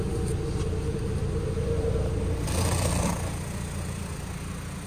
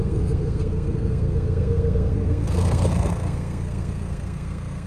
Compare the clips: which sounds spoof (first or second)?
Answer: second